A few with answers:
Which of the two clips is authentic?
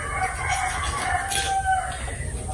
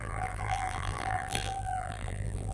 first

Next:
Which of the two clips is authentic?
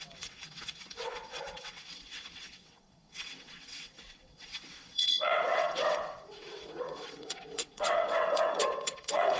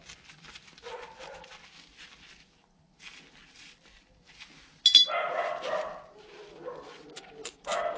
second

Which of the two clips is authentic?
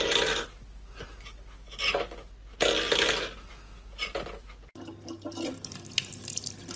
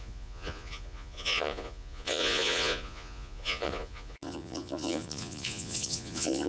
first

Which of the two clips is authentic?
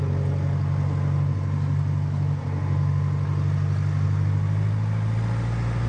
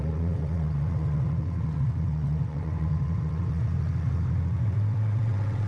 first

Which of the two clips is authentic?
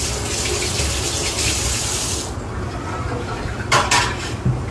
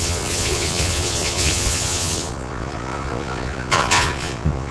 first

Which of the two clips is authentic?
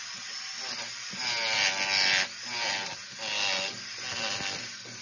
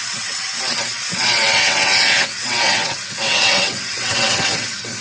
first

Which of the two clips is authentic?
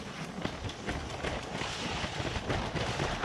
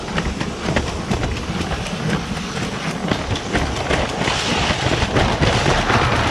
second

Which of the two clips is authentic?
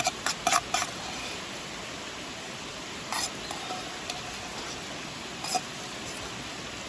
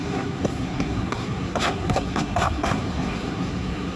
first